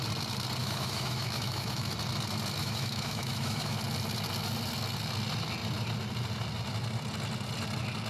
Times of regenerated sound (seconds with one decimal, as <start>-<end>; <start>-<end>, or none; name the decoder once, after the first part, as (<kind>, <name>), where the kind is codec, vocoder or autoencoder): 0.6-1.9 (autoencoder, DAC-VAE); 2.6-3.8